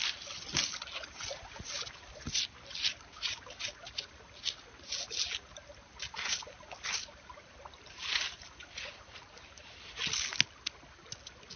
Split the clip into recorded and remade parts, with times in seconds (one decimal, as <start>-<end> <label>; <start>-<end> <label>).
0.0-11.6 recorded